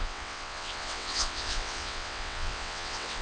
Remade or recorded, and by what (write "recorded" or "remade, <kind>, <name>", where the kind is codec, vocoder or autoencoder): remade, vocoder, WaveNeXt